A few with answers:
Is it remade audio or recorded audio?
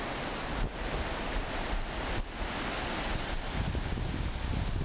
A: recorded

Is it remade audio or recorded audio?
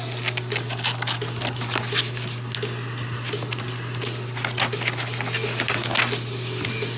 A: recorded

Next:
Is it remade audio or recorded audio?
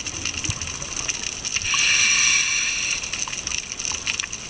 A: recorded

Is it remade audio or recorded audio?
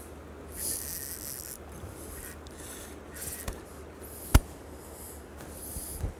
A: recorded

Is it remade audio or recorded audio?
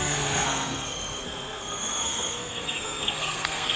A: remade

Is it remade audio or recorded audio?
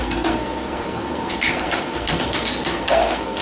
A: remade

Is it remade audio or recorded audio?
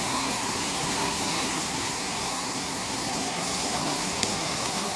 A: remade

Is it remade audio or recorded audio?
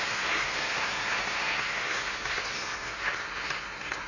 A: remade